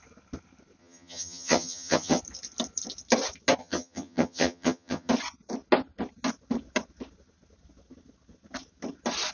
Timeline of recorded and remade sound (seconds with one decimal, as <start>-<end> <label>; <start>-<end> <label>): 0.0-0.8 recorded; 0.8-2.2 remade; 2.2-3.6 recorded; 3.6-5.1 remade; 5.1-9.3 recorded